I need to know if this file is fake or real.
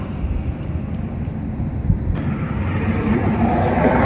fake